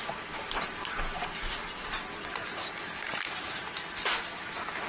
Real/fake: real